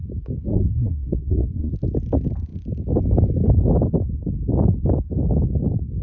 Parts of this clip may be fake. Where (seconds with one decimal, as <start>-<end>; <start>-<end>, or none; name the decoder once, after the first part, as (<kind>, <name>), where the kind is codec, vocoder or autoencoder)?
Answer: 0.5-1.7 (codec, SNAC)